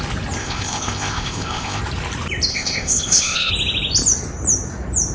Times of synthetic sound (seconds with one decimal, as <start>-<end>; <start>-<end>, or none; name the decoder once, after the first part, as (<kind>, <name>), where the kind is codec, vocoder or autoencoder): 0.4-1.8 (codec, ZipCodec); 2.5-3.5